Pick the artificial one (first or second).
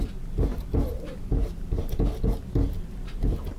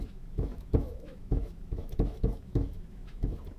second